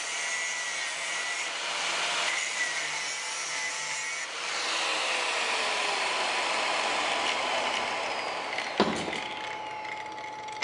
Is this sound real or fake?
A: real